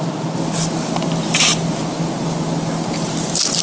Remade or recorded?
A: recorded